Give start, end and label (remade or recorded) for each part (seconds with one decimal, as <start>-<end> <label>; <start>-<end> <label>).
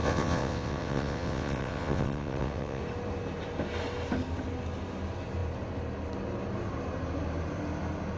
0.0-2.8 remade; 2.8-8.2 recorded